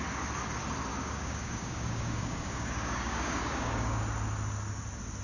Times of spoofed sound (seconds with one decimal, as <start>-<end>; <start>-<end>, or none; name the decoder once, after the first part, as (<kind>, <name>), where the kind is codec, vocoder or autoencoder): 0.9-4.0 (codec, DAC)